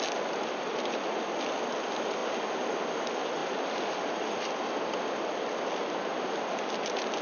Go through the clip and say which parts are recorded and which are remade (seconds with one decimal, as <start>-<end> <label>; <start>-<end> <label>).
0.0-7.2 recorded